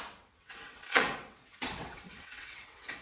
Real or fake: fake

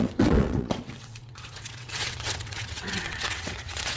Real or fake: fake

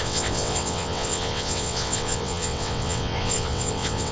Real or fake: fake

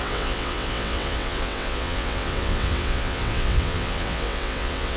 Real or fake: fake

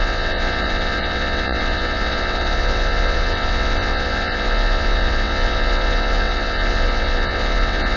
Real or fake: fake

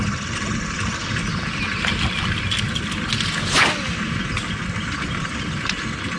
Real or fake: real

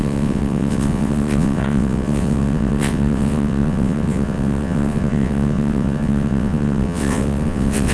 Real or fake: fake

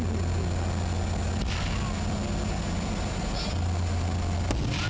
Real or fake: real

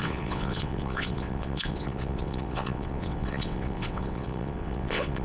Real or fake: fake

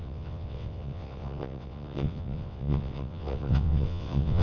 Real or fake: fake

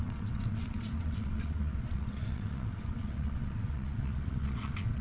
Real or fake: fake